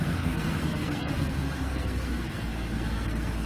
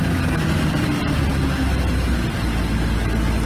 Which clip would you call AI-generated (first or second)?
first